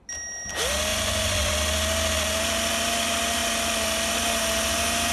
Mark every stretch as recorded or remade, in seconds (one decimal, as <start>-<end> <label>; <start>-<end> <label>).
0.0-0.9 recorded; 0.9-1.5 remade; 1.5-5.1 recorded